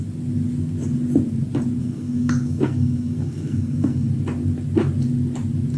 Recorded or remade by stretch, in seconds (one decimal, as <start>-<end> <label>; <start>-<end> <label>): 0.0-1.8 recorded; 1.8-4.1 remade; 4.1-5.8 recorded